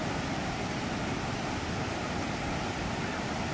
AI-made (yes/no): no